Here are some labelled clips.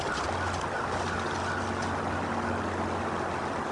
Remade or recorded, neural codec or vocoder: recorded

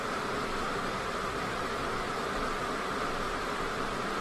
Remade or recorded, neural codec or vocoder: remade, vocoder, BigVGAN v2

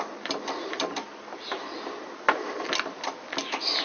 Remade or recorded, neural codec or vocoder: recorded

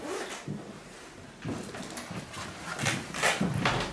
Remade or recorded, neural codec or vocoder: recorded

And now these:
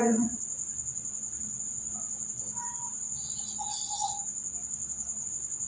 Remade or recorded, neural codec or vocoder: recorded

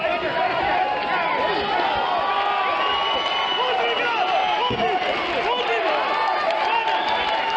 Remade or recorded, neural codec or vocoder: recorded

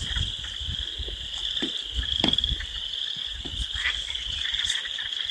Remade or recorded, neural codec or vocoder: recorded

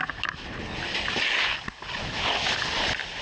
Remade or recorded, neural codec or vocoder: recorded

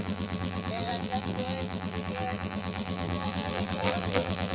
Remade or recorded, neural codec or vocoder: remade, vocoder, BigVGAN v2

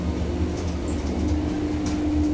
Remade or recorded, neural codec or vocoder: recorded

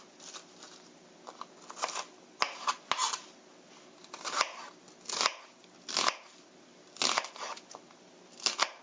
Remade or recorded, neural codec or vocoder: recorded